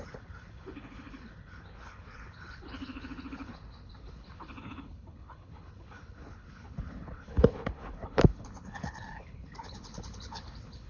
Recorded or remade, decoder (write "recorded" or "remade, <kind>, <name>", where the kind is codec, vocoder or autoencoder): remade, codec, HILCodec